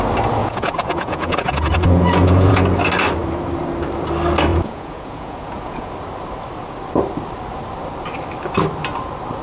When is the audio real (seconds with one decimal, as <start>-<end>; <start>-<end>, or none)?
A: 0.0-0.4; 2.6-4.5; 5.9-9.4